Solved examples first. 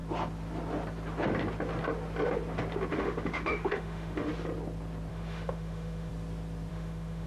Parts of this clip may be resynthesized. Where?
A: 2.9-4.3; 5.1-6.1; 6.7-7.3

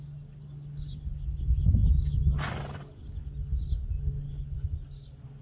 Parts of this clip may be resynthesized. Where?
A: none

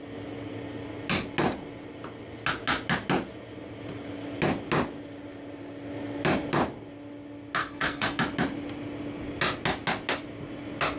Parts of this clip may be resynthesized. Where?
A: 7.6-8.2

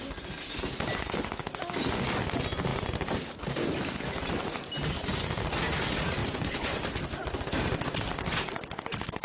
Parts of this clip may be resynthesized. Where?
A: 6.2-6.8

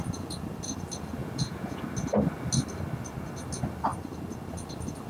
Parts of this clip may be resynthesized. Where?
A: 1.2-1.8

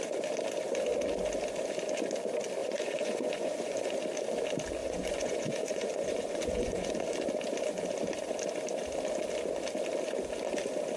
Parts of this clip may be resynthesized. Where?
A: 2.6-3.9; 4.8-6.9

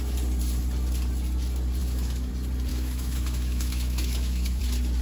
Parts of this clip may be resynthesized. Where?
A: 1.8-2.3; 2.7-4.6

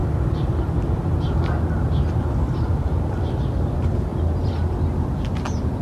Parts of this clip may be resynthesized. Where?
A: none